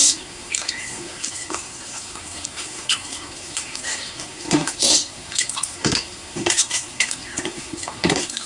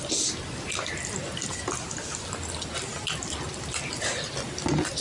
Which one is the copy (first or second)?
first